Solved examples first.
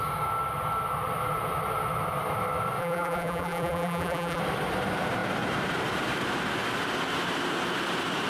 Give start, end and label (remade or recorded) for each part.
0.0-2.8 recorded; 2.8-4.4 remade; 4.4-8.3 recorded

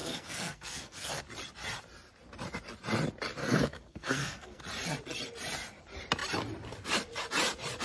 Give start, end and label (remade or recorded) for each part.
0.0-1.2 remade; 1.2-3.4 recorded; 3.4-4.6 remade; 4.6-7.8 recorded

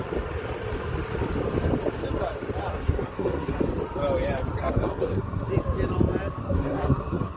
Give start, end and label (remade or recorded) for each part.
0.0-2.7 recorded; 2.7-3.6 remade; 3.6-4.6 recorded; 4.6-5.5 remade; 5.5-6.4 recorded; 6.4-7.4 remade

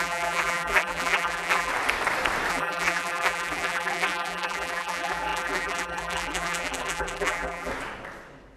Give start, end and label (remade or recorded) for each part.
0.0-1.7 remade; 1.7-2.5 recorded; 2.5-7.7 remade; 7.7-8.6 recorded

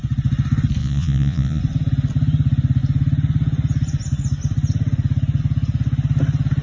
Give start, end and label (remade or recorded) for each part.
0.0-0.8 recorded; 0.8-1.6 remade; 1.6-6.6 recorded

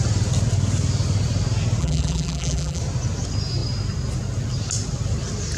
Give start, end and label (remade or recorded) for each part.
0.0-1.8 recorded; 1.8-2.8 remade; 2.8-5.6 recorded